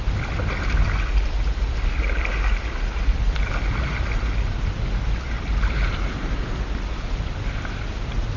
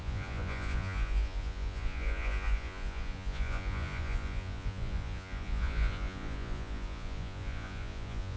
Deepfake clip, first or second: second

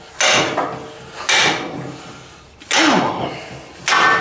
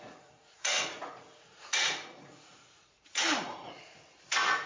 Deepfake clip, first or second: second